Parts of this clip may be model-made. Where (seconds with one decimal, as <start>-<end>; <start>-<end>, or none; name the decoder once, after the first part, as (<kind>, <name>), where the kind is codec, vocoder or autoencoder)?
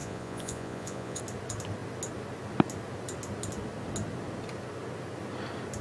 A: 0.0-1.2 (vocoder, Vocos)